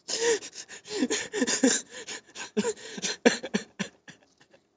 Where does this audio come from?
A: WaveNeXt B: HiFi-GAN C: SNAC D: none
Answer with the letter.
D